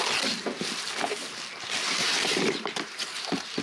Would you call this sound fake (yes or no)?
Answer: no